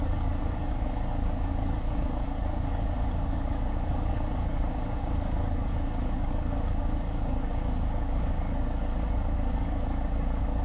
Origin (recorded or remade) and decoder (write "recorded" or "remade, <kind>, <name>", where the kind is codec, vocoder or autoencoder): remade, codec, DAC